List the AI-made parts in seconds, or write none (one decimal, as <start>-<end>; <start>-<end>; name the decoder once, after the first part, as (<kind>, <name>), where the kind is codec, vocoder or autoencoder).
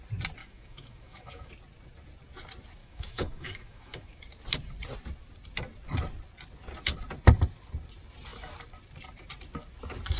0.4-1.5 (autoencoder, DAC-VAE); 2.8-4.2